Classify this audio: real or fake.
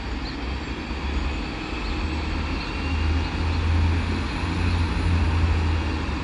real